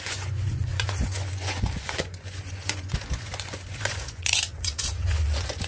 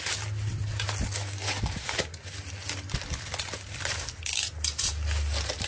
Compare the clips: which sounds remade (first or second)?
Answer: first